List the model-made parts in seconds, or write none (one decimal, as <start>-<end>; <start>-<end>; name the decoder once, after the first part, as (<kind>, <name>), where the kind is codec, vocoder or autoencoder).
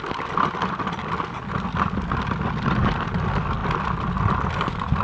none